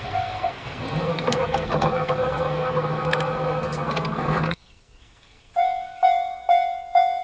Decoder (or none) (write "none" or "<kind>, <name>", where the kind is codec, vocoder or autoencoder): codec, SNAC